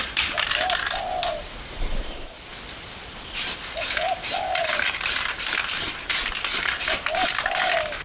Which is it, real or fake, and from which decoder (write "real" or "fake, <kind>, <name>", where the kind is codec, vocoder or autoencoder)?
fake, vocoder, BigVGAN v2